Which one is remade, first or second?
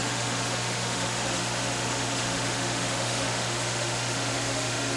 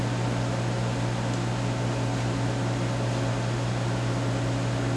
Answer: first